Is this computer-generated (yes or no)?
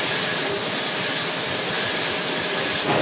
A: no